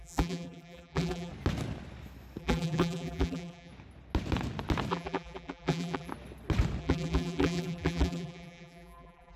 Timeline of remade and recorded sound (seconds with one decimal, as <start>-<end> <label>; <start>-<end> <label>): 0.0-1.3 remade; 1.3-2.4 recorded; 2.4-3.7 remade; 3.7-4.9 recorded; 4.9-6.1 remade; 6.1-6.8 recorded; 6.8-9.4 remade